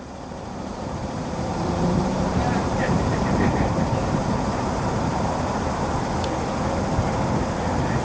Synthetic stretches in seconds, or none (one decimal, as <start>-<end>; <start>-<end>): 0.7-5.5

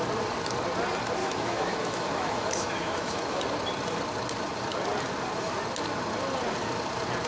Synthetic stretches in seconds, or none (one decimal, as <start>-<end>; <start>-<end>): 1.2-3.4

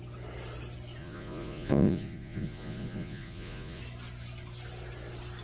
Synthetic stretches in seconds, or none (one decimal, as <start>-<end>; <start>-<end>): 1.0-3.8

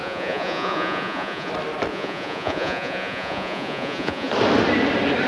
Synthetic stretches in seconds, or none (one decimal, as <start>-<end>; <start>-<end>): 0.0-1.5; 1.9-4.3

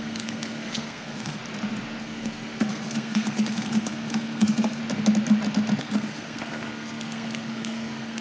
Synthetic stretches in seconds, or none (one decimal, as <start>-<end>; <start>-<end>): 0.0-1.4; 2.0-4.8; 5.8-8.2

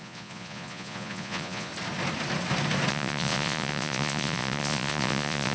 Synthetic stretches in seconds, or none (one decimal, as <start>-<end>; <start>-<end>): 0.0-1.7; 2.9-5.5

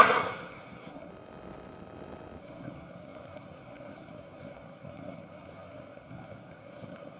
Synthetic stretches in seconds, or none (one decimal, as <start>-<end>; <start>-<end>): 0.0-1.1; 2.4-7.2